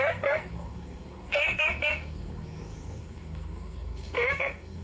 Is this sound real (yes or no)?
no